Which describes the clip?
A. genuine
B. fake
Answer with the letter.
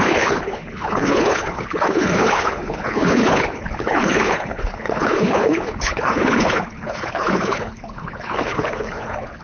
B